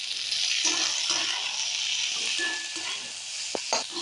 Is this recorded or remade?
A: recorded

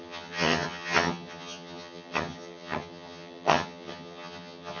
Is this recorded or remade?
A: remade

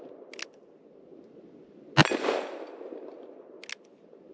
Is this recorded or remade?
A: recorded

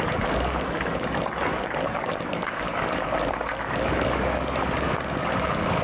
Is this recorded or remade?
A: remade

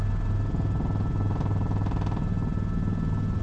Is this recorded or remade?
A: recorded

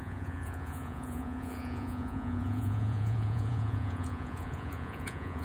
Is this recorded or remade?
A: remade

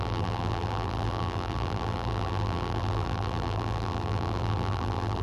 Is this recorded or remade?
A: remade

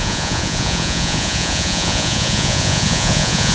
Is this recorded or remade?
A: remade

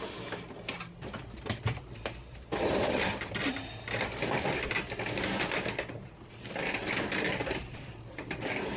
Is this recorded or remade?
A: recorded